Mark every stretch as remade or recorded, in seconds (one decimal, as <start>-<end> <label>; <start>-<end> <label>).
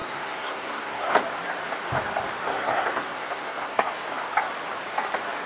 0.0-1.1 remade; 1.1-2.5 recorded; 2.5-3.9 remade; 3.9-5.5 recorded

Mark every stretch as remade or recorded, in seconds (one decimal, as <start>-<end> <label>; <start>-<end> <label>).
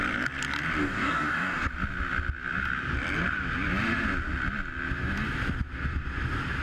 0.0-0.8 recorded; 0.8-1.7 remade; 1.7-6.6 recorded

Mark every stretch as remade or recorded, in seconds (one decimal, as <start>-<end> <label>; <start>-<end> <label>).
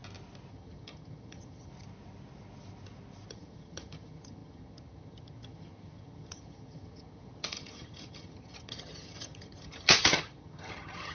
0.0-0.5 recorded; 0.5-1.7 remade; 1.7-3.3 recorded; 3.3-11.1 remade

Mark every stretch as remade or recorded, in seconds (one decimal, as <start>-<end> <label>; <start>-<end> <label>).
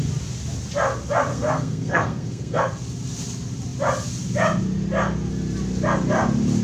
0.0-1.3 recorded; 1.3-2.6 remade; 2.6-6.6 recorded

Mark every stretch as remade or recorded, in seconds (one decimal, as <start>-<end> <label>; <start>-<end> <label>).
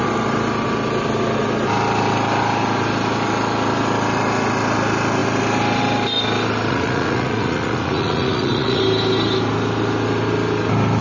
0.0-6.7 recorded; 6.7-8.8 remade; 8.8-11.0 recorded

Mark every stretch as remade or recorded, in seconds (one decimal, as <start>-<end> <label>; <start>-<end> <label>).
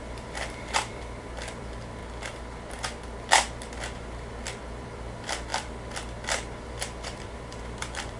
0.0-2.0 remade; 2.0-4.6 recorded; 4.6-8.2 remade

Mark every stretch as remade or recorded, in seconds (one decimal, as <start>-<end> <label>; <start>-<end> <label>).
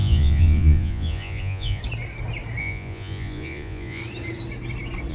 0.0-1.8 remade; 1.8-2.6 recorded; 2.6-4.0 remade; 4.0-5.1 recorded